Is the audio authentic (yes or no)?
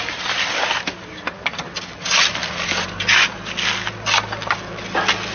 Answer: yes